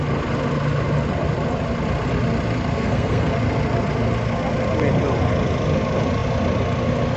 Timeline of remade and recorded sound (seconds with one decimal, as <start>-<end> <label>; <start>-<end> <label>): 0.0-2.7 recorded; 2.7-3.3 remade; 3.3-7.2 recorded